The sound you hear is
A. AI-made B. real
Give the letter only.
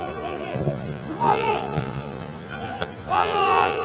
A